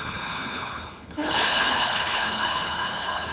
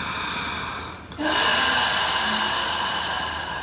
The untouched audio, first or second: second